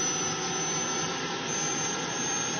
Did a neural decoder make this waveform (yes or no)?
no